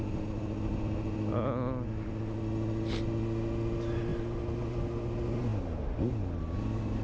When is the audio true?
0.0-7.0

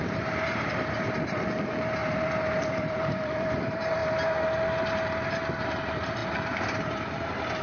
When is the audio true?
2.0-2.6; 4.0-5.6

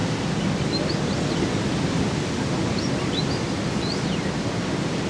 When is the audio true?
0.0-3.1